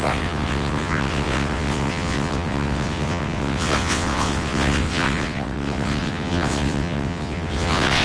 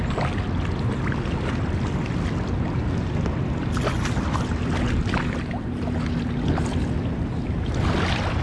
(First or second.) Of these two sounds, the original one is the second